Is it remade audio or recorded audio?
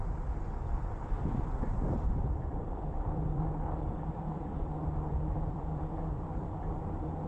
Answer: remade